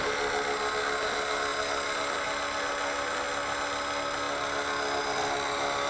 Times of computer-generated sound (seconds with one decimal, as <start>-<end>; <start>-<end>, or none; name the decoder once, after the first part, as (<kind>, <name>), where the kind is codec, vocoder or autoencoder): none